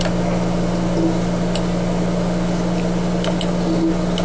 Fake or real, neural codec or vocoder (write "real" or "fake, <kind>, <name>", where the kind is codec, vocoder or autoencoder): real